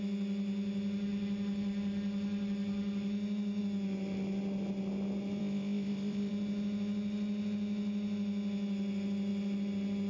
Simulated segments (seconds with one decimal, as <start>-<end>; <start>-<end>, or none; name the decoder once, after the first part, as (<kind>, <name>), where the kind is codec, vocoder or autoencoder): 5.4-6.3 (codec, ZipCodec)